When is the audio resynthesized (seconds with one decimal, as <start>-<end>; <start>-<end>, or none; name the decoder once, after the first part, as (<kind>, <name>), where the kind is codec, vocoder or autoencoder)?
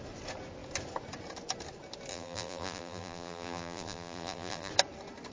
2.1-4.7 (vocoder, BigVGAN v2)